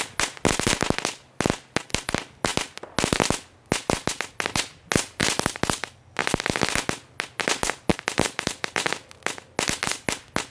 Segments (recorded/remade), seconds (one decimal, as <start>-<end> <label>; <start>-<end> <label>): 0.0-7.9 recorded; 7.9-9.1 remade; 9.1-10.5 recorded